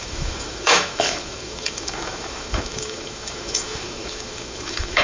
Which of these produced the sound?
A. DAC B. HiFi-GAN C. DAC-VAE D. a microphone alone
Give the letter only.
C